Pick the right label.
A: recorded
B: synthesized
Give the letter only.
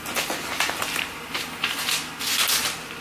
A